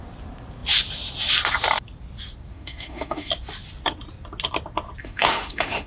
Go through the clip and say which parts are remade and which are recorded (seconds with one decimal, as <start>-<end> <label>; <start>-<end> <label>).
0.0-2.5 recorded; 2.5-3.3 remade; 3.3-5.0 recorded; 5.0-5.9 remade